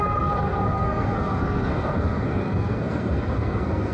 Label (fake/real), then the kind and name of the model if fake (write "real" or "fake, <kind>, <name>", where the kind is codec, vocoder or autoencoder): fake, codec, SNAC